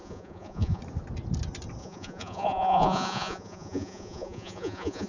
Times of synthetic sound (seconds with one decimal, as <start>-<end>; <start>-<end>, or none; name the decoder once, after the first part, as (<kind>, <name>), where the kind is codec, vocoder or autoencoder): 0.0-0.8 (vocoder, Vocos); 1.8-5.1